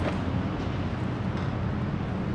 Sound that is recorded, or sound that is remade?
recorded